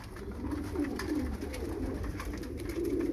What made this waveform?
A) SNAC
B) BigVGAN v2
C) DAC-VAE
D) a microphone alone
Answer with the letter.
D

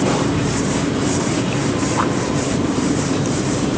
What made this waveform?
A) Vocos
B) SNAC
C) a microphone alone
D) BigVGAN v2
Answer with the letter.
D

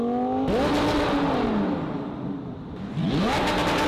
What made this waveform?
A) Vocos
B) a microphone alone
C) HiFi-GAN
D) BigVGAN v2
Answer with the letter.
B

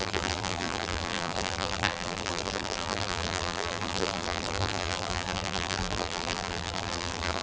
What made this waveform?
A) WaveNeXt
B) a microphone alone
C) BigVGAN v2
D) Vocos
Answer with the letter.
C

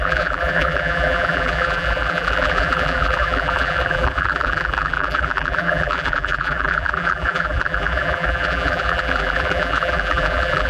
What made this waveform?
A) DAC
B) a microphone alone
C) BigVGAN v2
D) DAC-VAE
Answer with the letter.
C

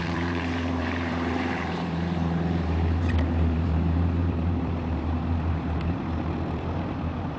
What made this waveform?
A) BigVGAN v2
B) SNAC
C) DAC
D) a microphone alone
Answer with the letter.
A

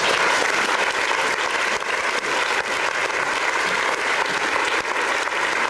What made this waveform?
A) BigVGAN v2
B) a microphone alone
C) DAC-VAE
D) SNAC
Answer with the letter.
B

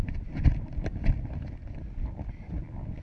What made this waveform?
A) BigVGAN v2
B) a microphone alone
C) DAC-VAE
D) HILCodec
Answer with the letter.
B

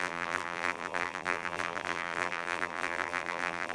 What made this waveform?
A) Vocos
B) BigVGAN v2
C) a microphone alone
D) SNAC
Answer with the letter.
B